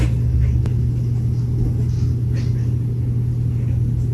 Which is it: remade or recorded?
recorded